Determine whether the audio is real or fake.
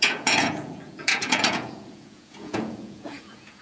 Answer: fake